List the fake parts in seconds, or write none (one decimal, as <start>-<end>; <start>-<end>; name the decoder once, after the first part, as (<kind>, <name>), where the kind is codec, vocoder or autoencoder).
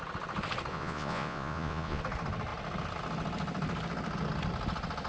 0.7-2.0 (vocoder, Vocos)